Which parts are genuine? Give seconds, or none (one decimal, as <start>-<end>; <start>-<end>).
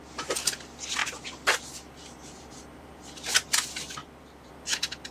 0.0-1.0; 2.6-4.0; 4.5-5.1